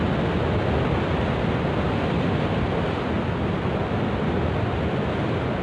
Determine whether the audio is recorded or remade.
recorded